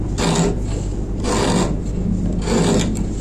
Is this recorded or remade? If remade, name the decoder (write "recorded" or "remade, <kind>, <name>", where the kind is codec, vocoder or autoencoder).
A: recorded